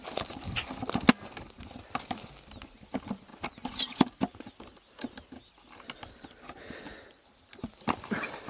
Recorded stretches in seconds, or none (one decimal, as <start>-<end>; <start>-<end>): 0.0-8.5